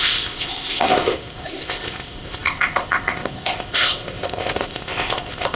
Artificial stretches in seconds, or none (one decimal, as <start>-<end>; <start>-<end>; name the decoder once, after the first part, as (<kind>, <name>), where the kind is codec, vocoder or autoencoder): 0.0-5.5 (codec, ZipCodec)